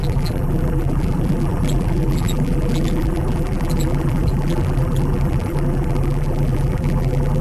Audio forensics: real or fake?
fake